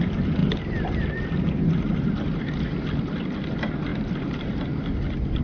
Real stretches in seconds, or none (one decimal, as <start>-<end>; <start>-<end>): 0.0-5.4